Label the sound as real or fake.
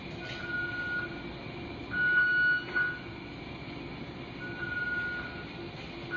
real